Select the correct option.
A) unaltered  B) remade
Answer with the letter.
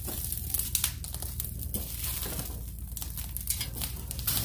A